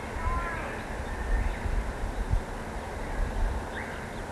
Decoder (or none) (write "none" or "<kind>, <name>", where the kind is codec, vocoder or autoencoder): none